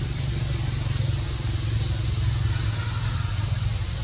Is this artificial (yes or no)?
no